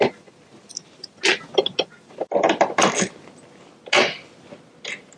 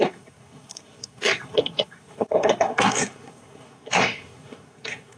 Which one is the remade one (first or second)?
second